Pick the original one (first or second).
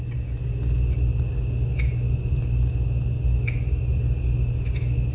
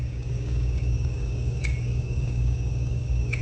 first